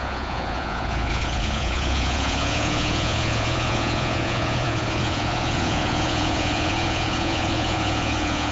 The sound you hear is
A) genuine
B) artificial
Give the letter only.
B